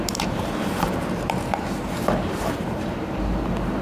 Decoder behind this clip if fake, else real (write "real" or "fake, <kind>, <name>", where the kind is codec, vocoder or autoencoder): fake, vocoder, BigVGAN v2